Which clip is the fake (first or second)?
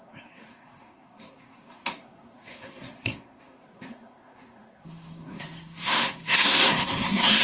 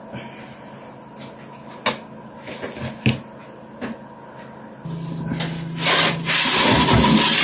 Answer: first